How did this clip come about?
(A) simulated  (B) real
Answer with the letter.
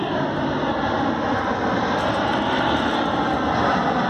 B